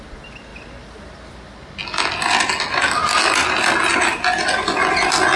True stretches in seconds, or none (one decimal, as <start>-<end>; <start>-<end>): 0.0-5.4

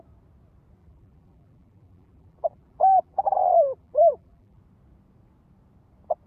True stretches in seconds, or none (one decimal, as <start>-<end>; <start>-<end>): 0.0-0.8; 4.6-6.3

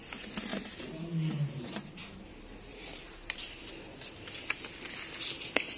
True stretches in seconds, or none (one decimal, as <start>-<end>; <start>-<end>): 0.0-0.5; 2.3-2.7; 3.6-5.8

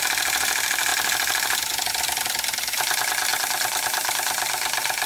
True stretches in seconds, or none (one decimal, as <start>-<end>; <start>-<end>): 0.0-5.1

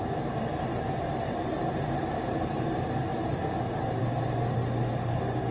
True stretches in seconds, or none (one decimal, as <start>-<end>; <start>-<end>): 0.0-0.7; 4.0-5.5

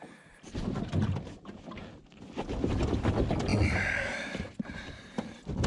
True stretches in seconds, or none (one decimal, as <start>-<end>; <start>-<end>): 0.0-5.7

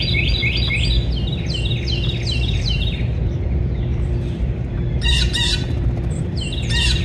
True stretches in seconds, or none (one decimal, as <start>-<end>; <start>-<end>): 0.4-2.6

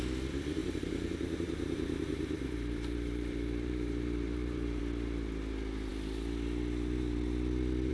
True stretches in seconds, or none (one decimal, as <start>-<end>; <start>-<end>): 0.0-0.6; 4.8-7.9